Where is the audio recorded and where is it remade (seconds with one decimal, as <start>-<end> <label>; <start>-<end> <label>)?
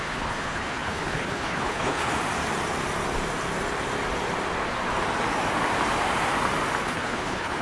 0.0-2.2 remade; 2.2-6.8 recorded; 6.8-7.6 remade